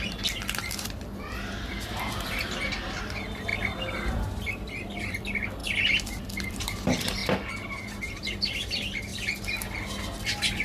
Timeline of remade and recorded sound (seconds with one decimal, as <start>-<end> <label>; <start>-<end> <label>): 0.0-3.5 remade; 3.5-4.1 recorded; 4.1-9.1 remade; 9.1-10.0 recorded; 10.0-10.6 remade